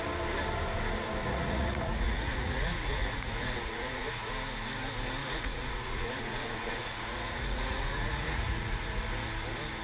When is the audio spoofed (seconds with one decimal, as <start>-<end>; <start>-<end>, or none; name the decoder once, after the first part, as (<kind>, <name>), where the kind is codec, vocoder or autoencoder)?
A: 1.2-4.3 (vocoder, Vocos); 5.2-9.0

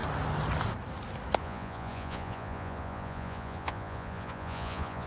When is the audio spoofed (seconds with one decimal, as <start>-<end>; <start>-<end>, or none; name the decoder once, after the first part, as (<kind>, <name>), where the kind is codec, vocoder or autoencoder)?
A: 1.4-5.1 (vocoder, Vocos)

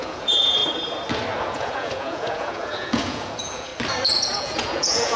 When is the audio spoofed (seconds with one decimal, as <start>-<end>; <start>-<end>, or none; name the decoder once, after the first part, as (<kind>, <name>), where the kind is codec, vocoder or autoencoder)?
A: 0.0-0.6 (vocoder, Vocos); 1.4-3.7; 4.4-5.2